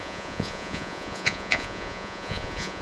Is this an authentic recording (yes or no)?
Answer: no